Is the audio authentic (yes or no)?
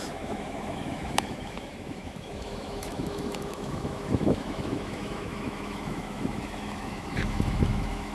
no